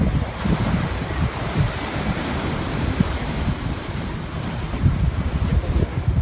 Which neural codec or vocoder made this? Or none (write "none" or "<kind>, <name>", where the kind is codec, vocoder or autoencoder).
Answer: vocoder, BigVGAN v2